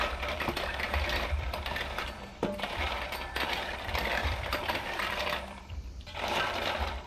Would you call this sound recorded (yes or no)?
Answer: no